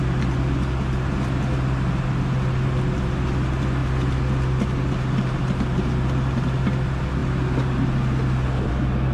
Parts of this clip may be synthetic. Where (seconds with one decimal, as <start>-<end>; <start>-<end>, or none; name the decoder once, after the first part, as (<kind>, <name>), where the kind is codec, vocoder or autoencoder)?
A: none